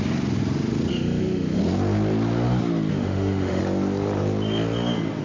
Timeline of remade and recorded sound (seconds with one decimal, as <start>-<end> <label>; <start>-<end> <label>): 0.0-0.9 recorded; 0.9-1.6 remade; 1.6-2.9 recorded; 2.9-3.6 remade; 3.6-5.2 recorded